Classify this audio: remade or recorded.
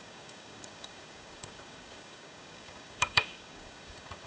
remade